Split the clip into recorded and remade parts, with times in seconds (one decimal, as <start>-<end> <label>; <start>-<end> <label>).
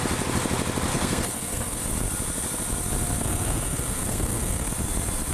0.0-0.9 recorded; 0.9-1.8 remade; 1.8-3.2 recorded; 3.2-4.7 remade; 4.7-5.3 recorded